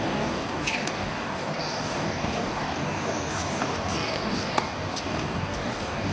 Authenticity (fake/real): fake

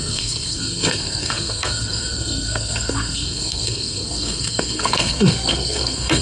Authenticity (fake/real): fake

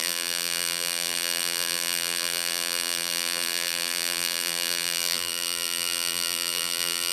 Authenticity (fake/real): fake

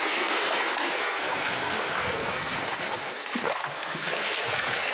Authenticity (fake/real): fake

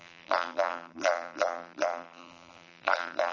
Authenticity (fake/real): fake